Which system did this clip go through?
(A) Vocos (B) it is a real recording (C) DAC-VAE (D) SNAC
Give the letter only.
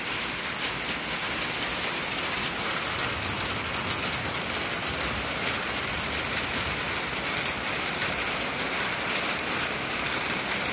B